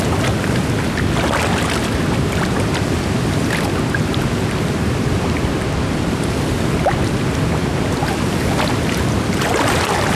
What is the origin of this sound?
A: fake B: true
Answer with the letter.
B